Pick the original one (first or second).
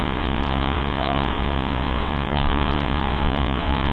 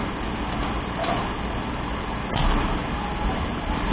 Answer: second